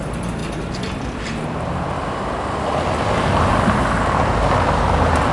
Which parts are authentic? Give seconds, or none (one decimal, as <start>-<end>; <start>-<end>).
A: 0.0-5.3

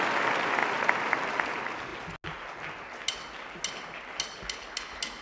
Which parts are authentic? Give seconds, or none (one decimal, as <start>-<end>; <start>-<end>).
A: 0.0-5.2

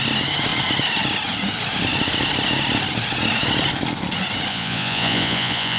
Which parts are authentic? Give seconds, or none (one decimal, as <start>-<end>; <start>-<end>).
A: 0.0-4.5